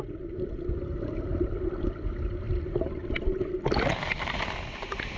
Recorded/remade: recorded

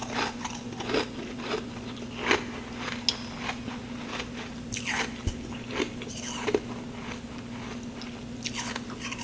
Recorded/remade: recorded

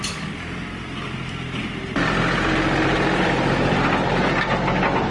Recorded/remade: remade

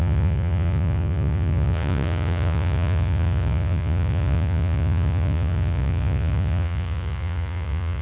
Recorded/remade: remade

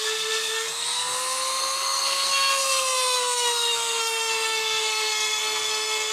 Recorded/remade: remade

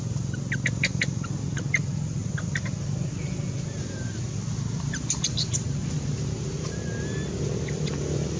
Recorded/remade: recorded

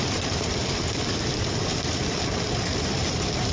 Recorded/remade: recorded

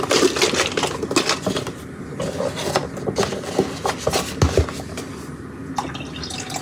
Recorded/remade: recorded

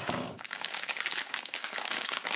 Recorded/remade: remade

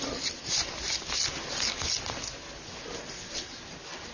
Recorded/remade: recorded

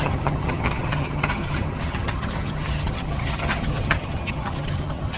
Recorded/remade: remade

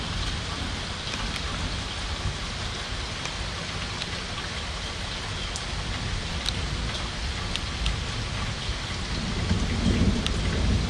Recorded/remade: recorded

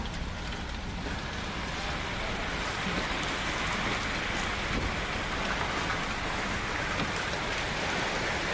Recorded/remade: recorded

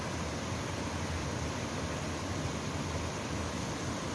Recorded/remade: recorded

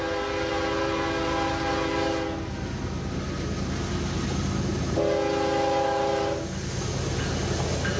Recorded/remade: recorded